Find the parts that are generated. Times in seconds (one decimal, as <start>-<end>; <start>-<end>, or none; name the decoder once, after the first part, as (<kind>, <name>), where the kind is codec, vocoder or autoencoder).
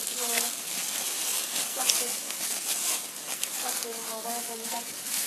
0.0-5.3 (codec, SNAC)